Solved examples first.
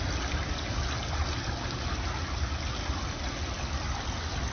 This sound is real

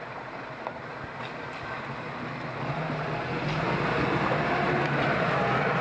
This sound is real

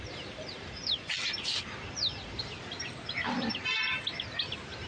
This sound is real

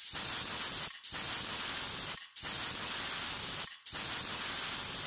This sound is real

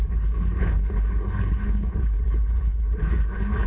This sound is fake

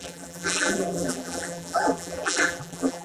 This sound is fake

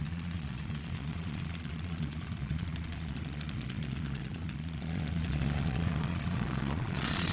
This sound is fake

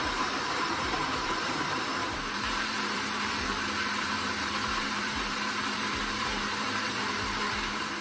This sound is fake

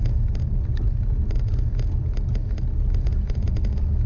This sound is real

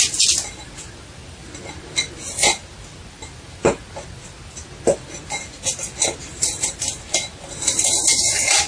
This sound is real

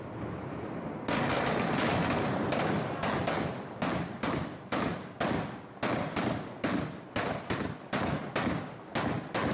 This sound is real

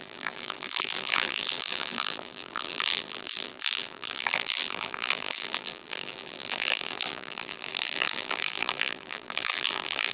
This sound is fake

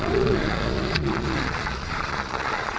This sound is fake